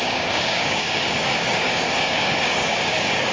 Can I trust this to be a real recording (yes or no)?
no